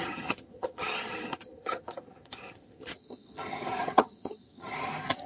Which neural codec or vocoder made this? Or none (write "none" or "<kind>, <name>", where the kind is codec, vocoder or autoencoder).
vocoder, HiFi-GAN